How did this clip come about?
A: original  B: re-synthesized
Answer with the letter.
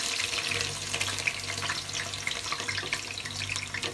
A